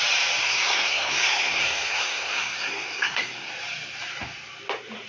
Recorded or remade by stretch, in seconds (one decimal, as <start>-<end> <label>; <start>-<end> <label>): 0.0-0.4 recorded; 0.4-3.5 remade; 3.5-5.1 recorded